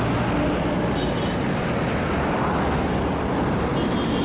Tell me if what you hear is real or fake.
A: real